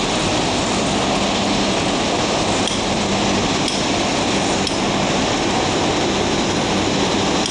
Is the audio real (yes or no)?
yes